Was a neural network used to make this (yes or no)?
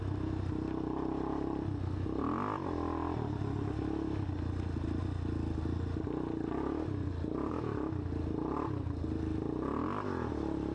no